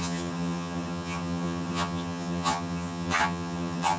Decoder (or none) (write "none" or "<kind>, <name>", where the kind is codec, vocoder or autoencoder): vocoder, HiFi-GAN